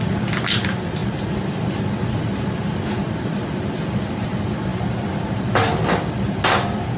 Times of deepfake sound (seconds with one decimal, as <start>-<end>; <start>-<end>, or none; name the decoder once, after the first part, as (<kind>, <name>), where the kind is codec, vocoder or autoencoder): none